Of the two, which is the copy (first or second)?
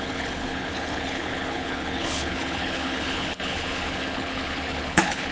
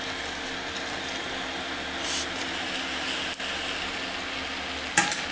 first